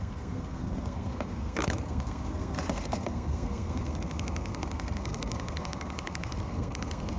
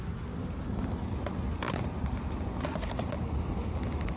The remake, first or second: first